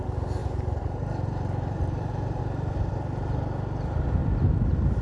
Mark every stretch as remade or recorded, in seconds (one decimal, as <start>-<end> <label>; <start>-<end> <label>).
0.0-0.4 recorded; 0.4-2.4 remade; 2.4-5.0 recorded